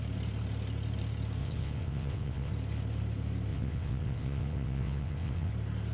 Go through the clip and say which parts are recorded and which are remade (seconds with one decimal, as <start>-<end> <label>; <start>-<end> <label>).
0.0-1.4 recorded; 1.4-2.5 remade; 2.5-3.5 recorded; 3.5-5.5 remade; 5.5-5.9 recorded